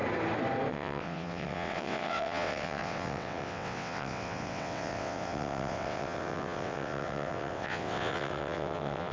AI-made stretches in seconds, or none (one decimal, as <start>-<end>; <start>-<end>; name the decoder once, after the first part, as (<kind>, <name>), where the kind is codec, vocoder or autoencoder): 0.7-9.1 (vocoder, WaveNeXt)